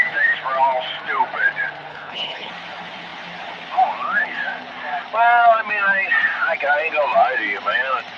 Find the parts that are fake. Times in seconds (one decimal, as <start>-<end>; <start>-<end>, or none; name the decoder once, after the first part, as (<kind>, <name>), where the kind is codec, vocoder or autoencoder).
1.9-2.5 (codec, HILCodec)